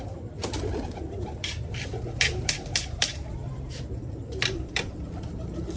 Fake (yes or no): yes